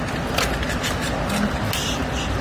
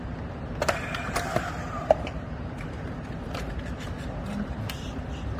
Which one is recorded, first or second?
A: first